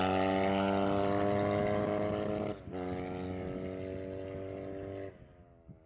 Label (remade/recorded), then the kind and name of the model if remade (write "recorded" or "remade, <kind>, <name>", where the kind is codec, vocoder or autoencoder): recorded